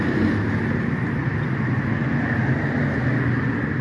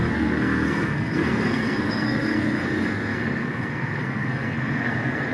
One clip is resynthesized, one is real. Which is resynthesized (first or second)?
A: second